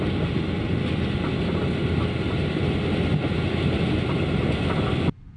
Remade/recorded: recorded